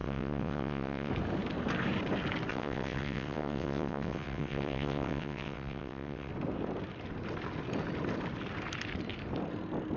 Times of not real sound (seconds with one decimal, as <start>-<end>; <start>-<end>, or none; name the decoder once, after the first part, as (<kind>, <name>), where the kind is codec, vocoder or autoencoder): 0.0-1.1 (vocoder, WaveNeXt); 2.5-6.3